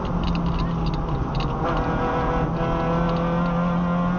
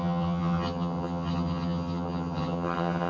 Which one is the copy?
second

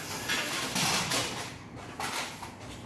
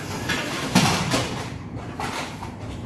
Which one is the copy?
second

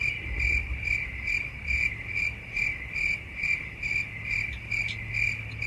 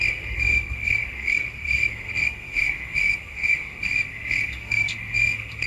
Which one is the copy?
second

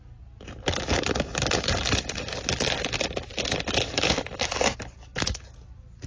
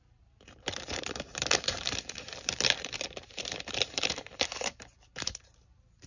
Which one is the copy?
second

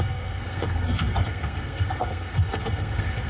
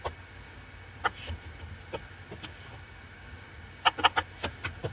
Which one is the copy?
first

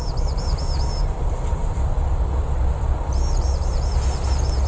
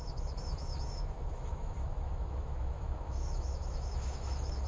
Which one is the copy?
second